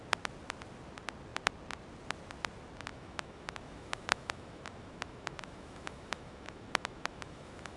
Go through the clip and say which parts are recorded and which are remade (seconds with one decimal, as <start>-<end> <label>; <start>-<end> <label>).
0.0-2.9 recorded; 2.9-7.8 remade